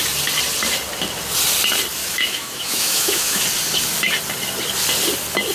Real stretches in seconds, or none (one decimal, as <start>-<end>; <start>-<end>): 0.0-2.0; 3.4-5.5